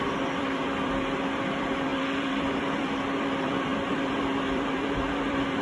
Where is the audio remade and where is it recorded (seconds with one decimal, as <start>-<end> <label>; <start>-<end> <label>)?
0.0-5.6 remade